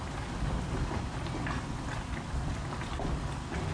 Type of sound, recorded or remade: recorded